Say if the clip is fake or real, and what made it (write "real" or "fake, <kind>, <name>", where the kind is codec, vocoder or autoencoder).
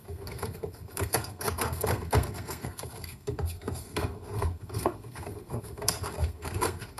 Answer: fake, codec, SNAC